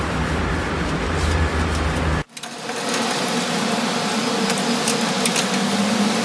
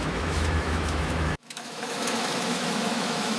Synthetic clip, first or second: second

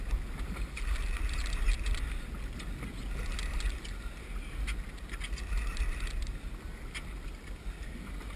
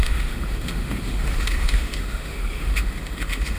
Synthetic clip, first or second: second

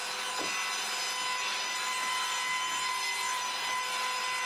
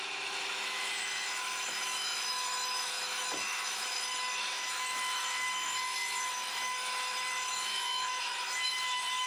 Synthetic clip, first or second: second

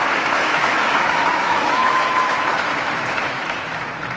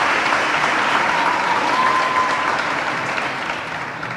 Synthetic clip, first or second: first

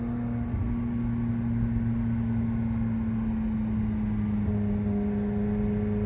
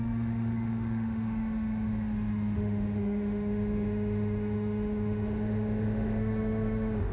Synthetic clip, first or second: second